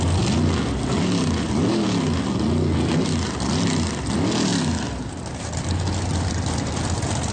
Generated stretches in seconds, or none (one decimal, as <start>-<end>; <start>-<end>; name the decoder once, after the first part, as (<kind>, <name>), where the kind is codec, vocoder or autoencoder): none